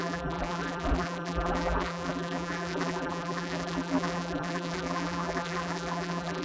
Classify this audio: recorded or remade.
remade